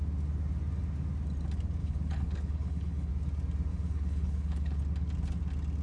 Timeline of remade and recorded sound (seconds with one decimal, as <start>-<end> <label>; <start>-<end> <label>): 0.0-1.8 recorded; 1.8-3.1 remade; 3.1-3.7 recorded; 3.7-4.8 remade; 4.8-5.8 recorded